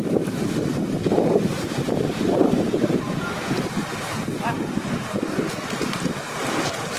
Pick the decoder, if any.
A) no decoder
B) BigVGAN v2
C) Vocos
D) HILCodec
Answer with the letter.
B